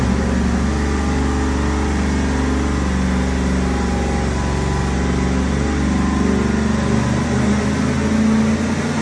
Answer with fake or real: real